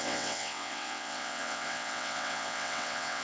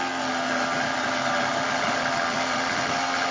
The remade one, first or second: first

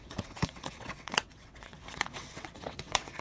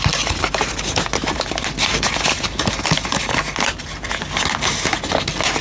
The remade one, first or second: first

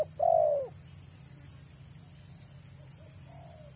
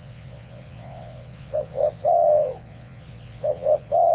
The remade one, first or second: second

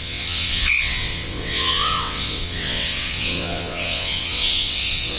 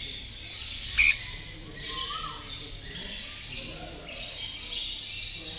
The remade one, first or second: first